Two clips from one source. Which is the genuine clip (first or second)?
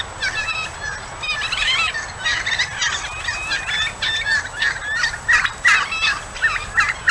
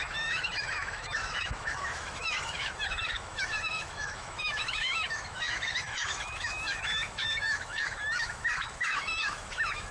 first